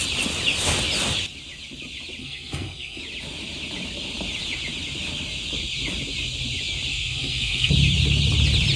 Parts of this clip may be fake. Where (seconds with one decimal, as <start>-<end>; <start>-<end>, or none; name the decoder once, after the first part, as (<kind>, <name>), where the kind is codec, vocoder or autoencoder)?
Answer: 2.2-3.0 (codec, SNAC); 6.9-7.7